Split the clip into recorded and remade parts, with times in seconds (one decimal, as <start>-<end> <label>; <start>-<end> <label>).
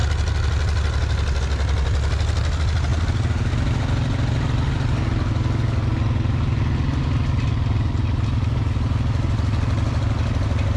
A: 0.0-10.8 recorded